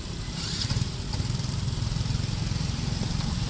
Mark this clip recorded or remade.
remade